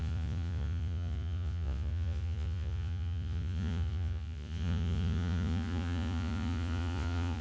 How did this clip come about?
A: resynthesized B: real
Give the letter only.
A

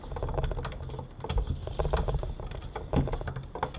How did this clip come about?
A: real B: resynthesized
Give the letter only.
A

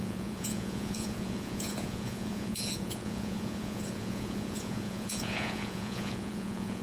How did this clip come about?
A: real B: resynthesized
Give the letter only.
B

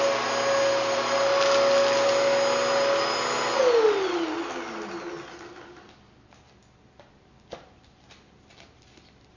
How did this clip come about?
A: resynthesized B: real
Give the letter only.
B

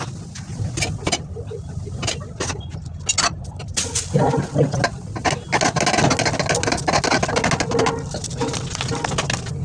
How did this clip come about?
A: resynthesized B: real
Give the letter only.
B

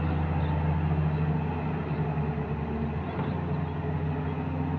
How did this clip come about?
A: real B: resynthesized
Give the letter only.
A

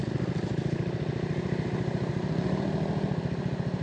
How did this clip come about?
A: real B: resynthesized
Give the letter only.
A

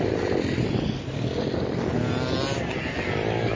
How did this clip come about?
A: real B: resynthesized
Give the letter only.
A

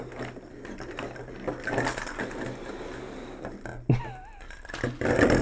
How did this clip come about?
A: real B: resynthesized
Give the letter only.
A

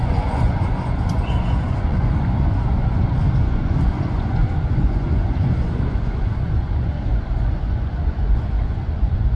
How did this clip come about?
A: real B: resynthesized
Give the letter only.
B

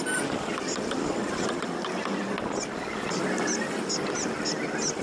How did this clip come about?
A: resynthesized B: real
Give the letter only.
B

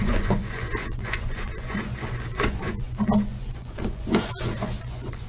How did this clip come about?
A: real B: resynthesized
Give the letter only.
B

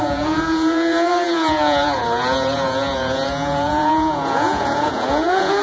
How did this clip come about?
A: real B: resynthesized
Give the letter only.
B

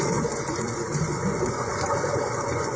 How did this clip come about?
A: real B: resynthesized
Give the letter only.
B